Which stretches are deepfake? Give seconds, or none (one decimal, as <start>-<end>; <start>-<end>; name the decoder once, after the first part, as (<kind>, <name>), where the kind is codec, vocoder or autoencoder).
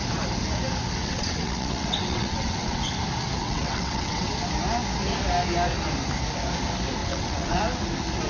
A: 1.0-2.9 (vocoder, WaveNeXt); 3.4-4.3; 7.0-7.6